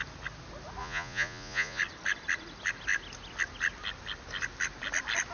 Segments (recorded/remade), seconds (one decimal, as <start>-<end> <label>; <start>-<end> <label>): 0.0-0.8 recorded; 0.8-1.8 remade; 1.8-5.3 recorded